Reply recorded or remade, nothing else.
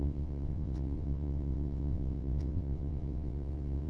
remade